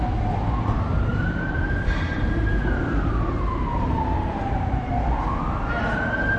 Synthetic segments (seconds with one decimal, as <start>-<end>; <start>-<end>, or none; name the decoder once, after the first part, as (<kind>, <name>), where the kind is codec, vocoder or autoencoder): 1.1-4.9 (vocoder, BigVGAN v2)